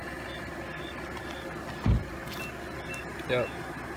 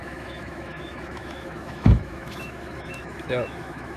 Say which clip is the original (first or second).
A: first